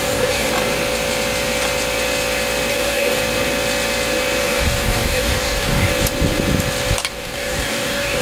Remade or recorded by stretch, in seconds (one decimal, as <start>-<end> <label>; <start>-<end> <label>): 0.0-0.5 remade; 0.5-2.7 recorded; 2.7-3.2 remade; 3.2-4.4 recorded; 4.4-5.9 remade; 5.9-7.1 recorded; 7.1-8.2 remade